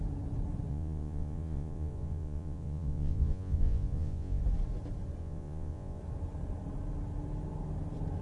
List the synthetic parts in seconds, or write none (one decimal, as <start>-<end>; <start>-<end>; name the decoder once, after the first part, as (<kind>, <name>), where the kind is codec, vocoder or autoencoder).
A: 0.7-4.4 (vocoder, Vocos); 5.2-6.0